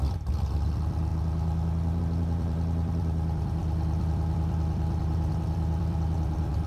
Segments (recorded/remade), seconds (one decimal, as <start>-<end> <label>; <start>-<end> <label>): 0.0-1.1 remade; 1.1-2.0 recorded; 2.0-6.7 remade